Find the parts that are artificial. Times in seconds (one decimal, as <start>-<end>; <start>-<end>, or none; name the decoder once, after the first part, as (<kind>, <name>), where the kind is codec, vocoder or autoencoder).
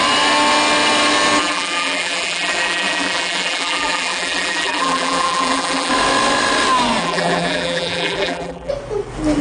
1.4-5.9 (vocoder, BigVGAN v2); 7.0-8.7